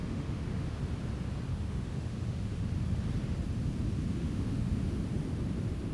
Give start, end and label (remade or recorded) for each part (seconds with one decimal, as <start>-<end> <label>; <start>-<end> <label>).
0.0-0.8 remade; 0.8-1.5 recorded; 1.5-2.7 remade; 2.7-4.1 recorded; 4.1-5.0 remade; 5.0-5.9 recorded